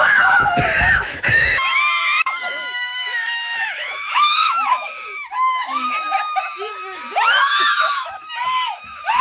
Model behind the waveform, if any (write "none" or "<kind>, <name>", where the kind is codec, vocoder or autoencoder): autoencoder, DAC-VAE